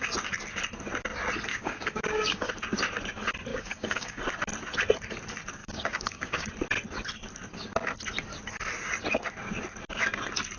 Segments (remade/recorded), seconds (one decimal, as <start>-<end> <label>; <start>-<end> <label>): 0.0-1.5 recorded; 1.5-2.5 remade; 2.5-3.5 recorded; 3.5-4.2 remade; 4.2-5.6 recorded; 5.6-6.5 remade; 6.5-10.6 recorded

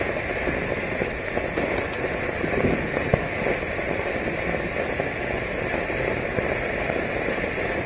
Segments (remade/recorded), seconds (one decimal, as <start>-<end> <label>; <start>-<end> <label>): 0.0-7.9 recorded

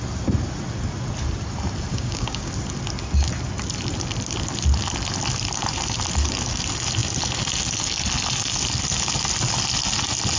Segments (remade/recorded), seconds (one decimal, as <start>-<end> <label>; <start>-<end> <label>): 0.0-1.9 recorded; 1.9-2.5 remade; 2.5-10.4 recorded

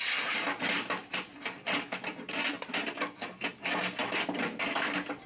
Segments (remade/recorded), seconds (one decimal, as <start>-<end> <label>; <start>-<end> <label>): 0.0-5.3 recorded

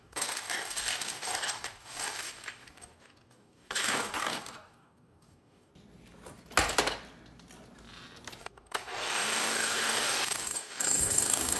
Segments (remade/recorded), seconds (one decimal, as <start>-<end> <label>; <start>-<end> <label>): 0.0-5.7 remade; 5.7-8.4 recorded; 8.4-11.6 remade